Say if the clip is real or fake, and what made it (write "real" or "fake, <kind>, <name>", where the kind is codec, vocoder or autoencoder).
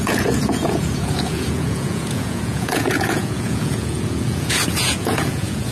fake, vocoder, Vocos